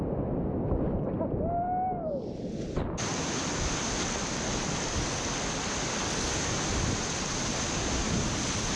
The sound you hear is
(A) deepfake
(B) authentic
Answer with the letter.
B